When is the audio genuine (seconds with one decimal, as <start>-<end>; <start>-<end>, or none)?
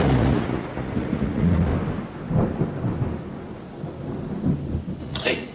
1.7-5.0